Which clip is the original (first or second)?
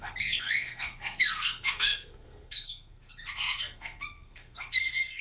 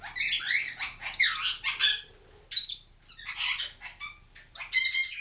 second